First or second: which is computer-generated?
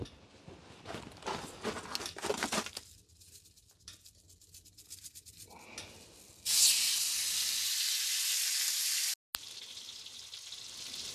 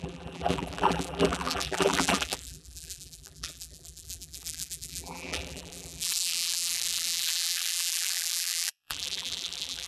second